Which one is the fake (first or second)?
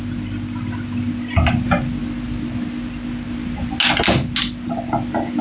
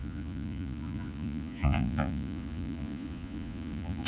second